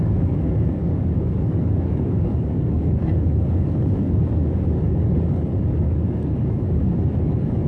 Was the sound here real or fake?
fake